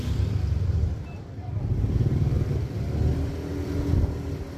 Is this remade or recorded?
recorded